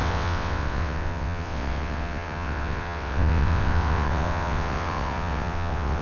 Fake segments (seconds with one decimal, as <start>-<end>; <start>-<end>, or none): 0.0-6.0